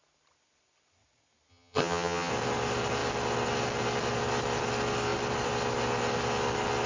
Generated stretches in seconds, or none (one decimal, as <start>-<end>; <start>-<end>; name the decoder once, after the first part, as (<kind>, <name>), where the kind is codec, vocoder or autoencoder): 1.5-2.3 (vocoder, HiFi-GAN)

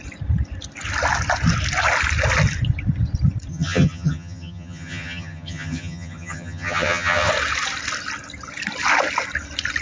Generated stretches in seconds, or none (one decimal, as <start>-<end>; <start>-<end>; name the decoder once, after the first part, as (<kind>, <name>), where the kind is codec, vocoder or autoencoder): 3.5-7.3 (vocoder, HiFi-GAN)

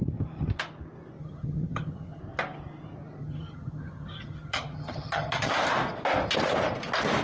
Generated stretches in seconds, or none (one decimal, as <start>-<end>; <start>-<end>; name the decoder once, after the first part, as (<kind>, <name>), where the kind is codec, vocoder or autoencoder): 1.2-2.2 (vocoder, HiFi-GAN); 3.2-5.5